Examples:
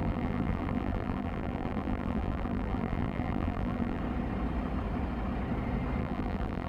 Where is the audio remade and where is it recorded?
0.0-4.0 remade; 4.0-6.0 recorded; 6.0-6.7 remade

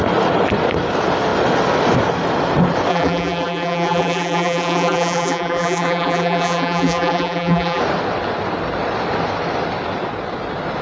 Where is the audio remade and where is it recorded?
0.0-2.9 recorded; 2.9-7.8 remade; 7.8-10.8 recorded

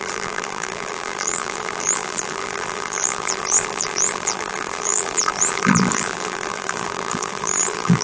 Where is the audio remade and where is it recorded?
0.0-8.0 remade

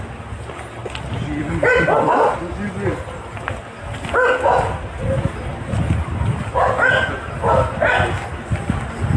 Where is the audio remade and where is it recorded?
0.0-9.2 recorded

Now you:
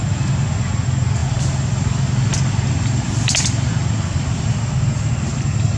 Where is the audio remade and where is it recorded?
0.0-1.2 recorded; 1.2-4.7 remade; 4.7-5.8 recorded

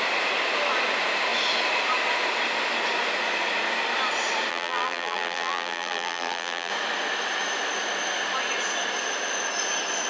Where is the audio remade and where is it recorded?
0.0-4.5 recorded; 4.5-6.7 remade; 6.7-10.1 recorded